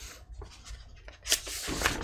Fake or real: real